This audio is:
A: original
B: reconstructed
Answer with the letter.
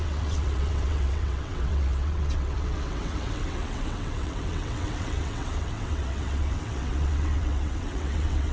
B